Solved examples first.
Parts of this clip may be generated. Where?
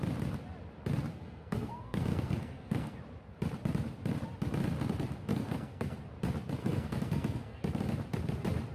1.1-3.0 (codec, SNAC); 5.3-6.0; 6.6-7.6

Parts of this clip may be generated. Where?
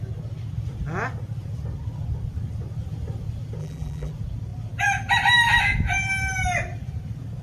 3.6-4.1 (vocoder, BigVGAN v2)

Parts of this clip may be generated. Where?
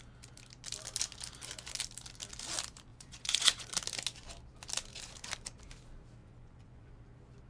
2.9-3.7 (vocoder, Vocos); 6.2-6.9